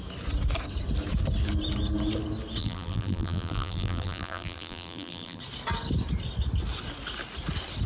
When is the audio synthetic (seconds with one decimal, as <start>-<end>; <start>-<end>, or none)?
2.6-5.4